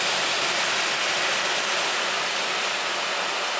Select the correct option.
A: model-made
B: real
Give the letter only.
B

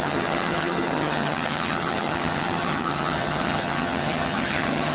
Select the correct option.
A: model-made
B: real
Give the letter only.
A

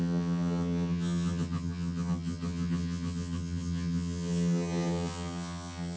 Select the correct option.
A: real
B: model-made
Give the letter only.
B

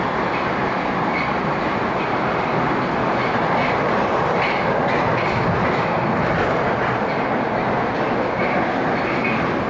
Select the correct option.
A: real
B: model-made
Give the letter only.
A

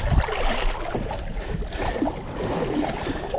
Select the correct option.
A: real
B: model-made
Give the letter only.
A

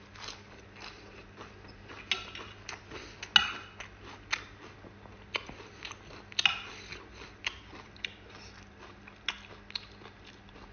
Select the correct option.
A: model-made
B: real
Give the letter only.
B